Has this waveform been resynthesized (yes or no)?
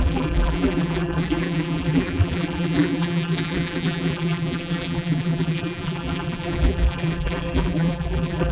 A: yes